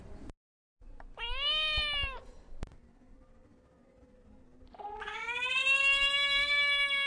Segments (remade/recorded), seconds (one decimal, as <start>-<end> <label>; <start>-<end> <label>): 0.0-7.1 recorded